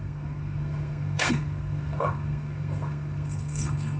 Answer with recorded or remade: remade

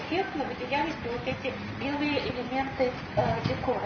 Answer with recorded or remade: recorded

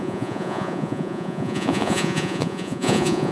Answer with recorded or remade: remade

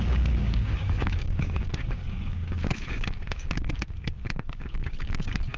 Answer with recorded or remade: remade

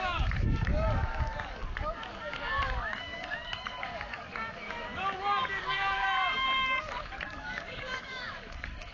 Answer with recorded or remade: remade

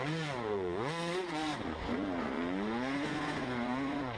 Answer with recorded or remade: remade